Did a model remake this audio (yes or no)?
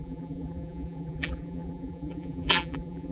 yes